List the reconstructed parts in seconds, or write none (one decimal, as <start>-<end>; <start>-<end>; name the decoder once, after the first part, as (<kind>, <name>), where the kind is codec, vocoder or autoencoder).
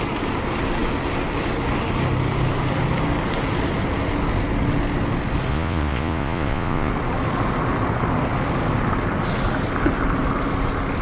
5.5-6.9 (vocoder, Vocos)